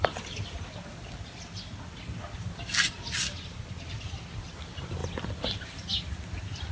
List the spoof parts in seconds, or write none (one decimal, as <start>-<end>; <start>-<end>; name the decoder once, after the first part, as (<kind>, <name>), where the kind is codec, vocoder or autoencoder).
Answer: none